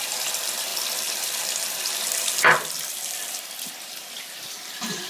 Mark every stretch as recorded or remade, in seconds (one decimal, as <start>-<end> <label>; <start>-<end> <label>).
0.0-5.1 remade